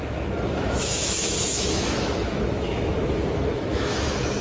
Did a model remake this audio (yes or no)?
yes